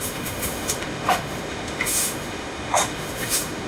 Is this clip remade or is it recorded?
remade